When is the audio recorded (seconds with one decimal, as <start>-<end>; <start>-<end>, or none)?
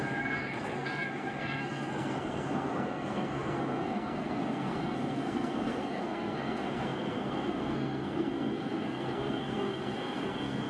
none